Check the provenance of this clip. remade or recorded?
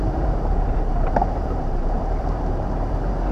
remade